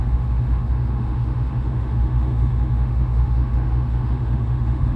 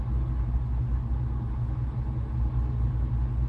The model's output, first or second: first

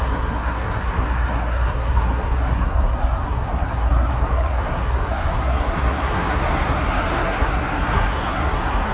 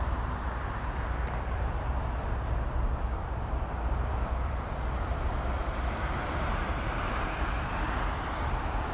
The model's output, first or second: first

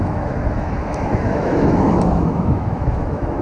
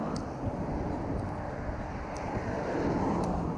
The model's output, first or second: first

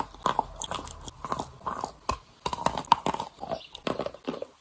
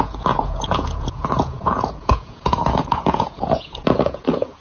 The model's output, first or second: second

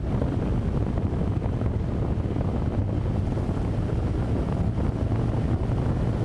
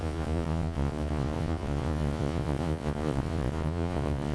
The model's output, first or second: second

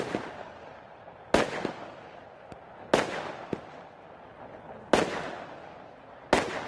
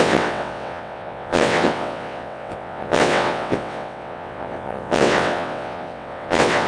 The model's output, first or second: second